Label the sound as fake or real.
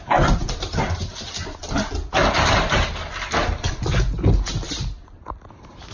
real